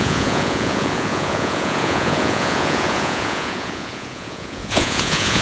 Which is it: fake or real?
fake